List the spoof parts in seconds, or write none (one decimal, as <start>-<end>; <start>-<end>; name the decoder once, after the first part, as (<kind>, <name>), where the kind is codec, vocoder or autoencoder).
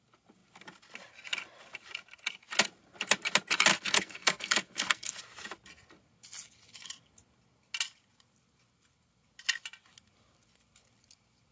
3.7-5.2 (codec, SNAC)